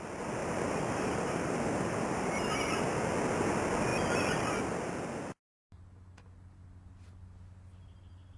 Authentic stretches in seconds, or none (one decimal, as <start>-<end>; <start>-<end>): 0.0-0.4; 2.4-8.4